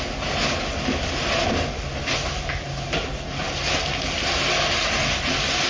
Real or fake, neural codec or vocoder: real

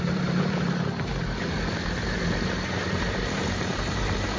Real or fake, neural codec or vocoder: fake, vocoder, BigVGAN v2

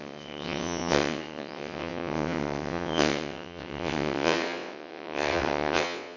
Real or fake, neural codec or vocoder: fake, vocoder, WaveNeXt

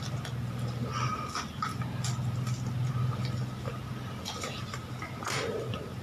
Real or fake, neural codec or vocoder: real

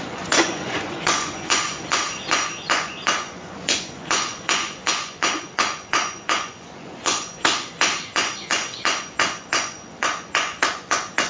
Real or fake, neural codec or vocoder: fake, vocoder, Vocos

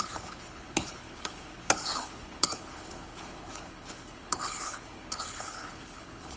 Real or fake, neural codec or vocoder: fake, codec, HILCodec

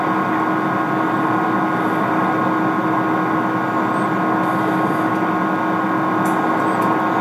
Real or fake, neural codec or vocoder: real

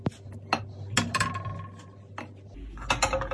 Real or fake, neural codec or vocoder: real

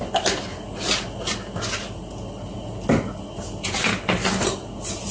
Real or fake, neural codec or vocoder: real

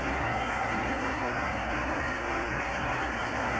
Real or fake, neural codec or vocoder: fake, codec, SNAC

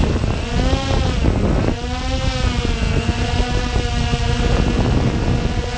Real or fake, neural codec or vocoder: real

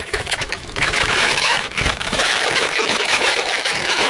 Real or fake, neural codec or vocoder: fake, autoencoder, DAC-VAE